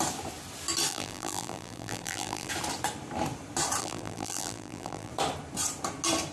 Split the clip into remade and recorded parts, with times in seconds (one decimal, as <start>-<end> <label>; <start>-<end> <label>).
0.0-0.9 recorded; 0.9-2.5 remade; 2.5-3.8 recorded; 3.8-5.1 remade; 5.1-6.3 recorded